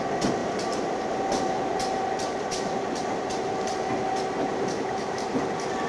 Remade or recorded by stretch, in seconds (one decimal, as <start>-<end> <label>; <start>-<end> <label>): 0.0-0.4 recorded; 0.4-3.9 remade; 3.9-4.5 recorded; 4.5-5.3 remade; 5.3-5.9 recorded